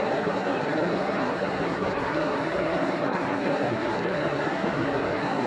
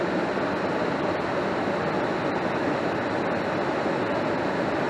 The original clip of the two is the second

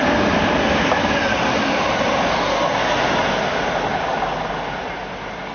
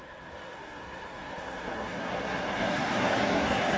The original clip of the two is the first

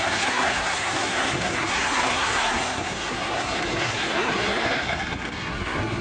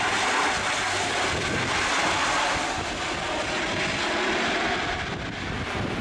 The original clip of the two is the second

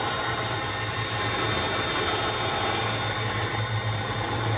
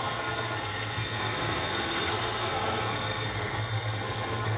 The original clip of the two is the first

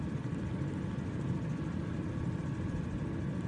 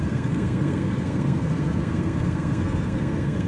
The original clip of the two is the first